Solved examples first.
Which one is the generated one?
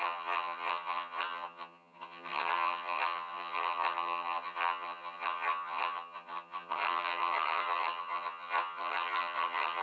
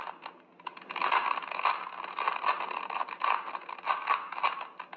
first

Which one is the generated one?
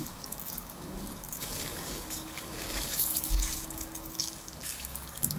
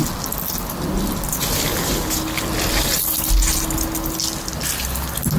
first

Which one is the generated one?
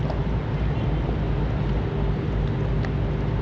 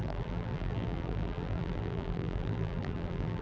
second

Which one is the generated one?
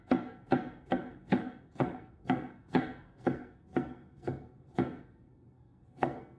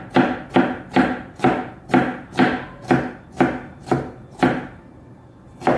first